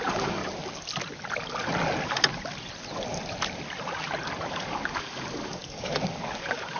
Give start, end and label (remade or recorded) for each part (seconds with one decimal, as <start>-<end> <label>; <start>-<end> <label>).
0.0-0.4 remade; 0.4-4.5 recorded; 4.5-6.8 remade

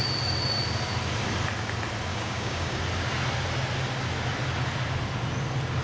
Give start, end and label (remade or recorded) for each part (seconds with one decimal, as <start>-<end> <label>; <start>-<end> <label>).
0.0-2.1 recorded; 2.1-2.8 remade; 2.8-5.8 recorded